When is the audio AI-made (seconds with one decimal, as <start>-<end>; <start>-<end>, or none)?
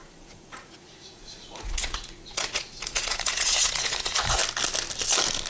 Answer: 0.0-4.4